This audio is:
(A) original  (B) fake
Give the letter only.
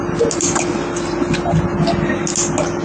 A